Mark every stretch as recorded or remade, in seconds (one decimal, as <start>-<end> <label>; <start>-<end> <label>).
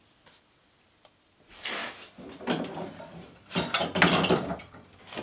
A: 0.0-5.2 recorded